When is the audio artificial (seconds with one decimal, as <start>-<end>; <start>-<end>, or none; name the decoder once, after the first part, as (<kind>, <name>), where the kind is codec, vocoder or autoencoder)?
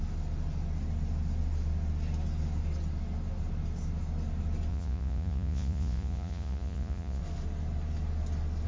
4.7-7.2 (vocoder, Vocos)